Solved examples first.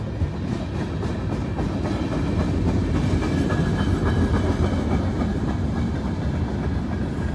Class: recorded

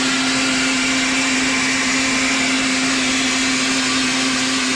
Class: recorded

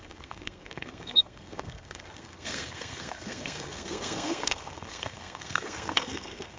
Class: remade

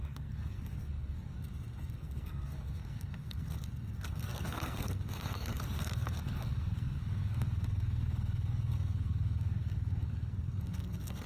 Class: remade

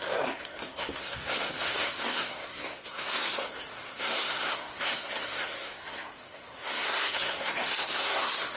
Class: remade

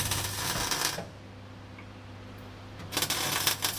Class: recorded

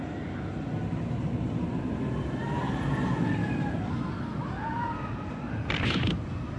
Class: recorded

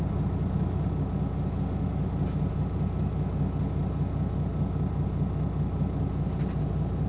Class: recorded